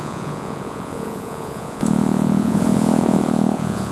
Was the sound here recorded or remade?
remade